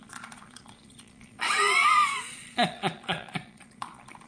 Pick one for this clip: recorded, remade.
remade